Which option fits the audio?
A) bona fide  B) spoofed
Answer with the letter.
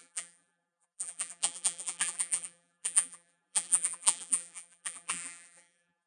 B